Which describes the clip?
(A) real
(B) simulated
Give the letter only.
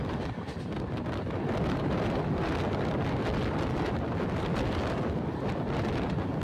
A